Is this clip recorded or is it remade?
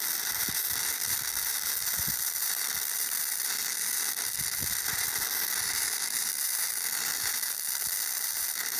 remade